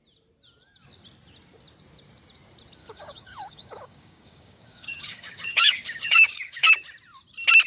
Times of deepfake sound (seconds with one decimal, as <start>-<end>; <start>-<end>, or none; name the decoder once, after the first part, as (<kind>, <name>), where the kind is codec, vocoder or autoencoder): 2.8-6.7 (codec, DAC)